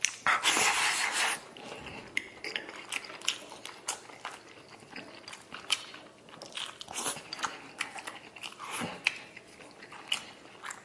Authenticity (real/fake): real